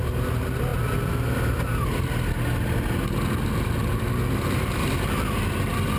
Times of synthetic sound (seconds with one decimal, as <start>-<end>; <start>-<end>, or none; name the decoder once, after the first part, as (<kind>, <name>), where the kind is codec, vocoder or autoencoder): none